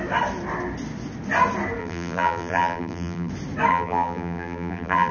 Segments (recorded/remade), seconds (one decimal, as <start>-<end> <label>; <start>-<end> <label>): 0.0-1.8 recorded; 1.8-3.3 remade; 3.3-3.7 recorded; 3.7-5.1 remade